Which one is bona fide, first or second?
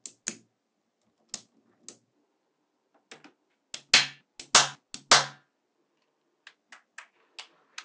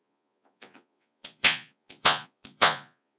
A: first